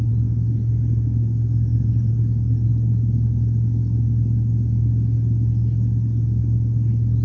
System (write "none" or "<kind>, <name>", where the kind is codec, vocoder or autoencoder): none